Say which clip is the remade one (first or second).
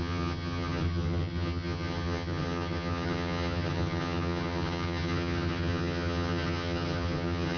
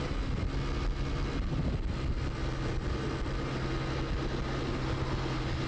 first